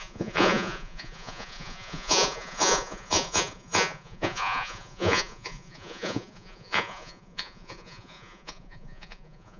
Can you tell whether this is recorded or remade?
remade